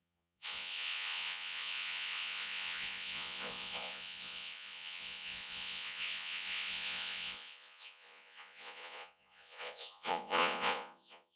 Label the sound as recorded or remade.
remade